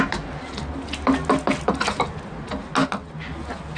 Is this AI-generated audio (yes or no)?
no